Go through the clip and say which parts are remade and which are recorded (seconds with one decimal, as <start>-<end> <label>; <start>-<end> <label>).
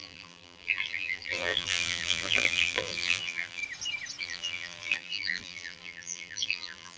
0.0-3.6 remade; 3.6-4.2 recorded; 4.2-7.0 remade